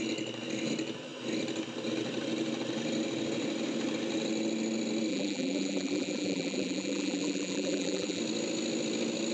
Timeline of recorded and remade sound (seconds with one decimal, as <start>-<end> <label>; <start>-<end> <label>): 0.0-5.1 recorded; 5.1-8.2 remade; 8.2-9.3 recorded